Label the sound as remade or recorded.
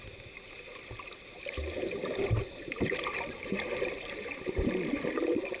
recorded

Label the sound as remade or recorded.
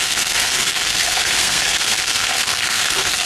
remade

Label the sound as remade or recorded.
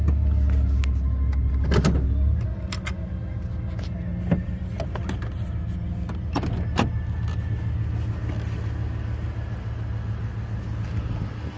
recorded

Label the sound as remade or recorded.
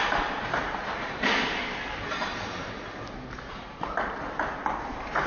recorded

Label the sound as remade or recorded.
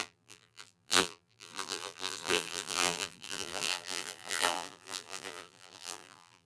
remade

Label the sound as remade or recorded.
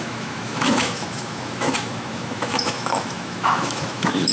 remade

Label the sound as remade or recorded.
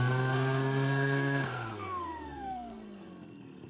remade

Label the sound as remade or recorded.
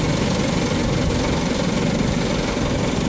recorded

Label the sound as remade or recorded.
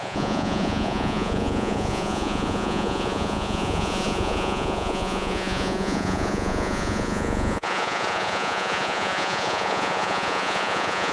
remade